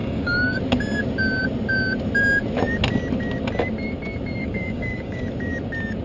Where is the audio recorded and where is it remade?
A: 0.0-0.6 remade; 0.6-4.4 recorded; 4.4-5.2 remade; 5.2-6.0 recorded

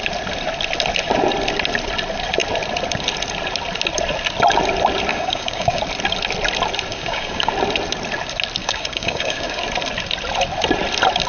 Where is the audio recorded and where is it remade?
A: 0.0-5.1 recorded; 5.1-5.8 remade; 5.8-6.9 recorded; 6.9-7.5 remade; 7.5-8.6 recorded; 8.6-9.6 remade; 9.6-11.3 recorded

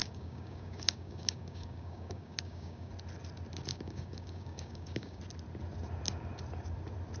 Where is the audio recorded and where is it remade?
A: 0.0-2.9 remade; 2.9-3.7 recorded; 3.7-5.2 remade; 5.2-7.2 recorded

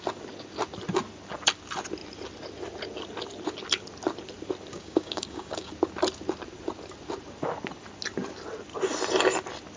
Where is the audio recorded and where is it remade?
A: 0.0-4.7 recorded; 4.7-5.7 remade; 5.7-9.8 recorded

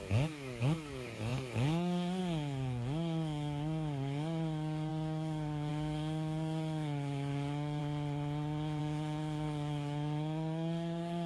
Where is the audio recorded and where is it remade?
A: 0.0-7.8 remade; 7.8-8.8 recorded; 8.8-11.3 remade